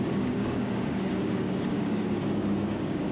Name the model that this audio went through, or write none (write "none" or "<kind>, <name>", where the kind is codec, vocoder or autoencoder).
codec, DAC